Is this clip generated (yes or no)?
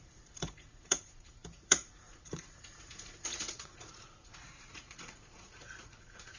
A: yes